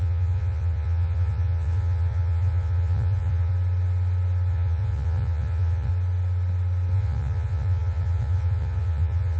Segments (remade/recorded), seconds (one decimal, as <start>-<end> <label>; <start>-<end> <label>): 0.0-3.5 remade; 3.5-4.5 recorded; 4.5-5.9 remade; 5.9-6.9 recorded; 6.9-9.4 remade